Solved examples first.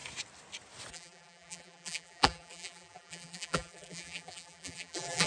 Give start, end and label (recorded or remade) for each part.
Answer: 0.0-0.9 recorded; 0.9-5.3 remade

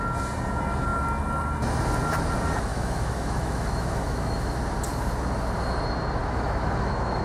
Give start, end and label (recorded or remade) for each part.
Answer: 0.0-2.7 recorded; 2.7-4.6 remade; 4.6-6.2 recorded; 6.2-7.2 remade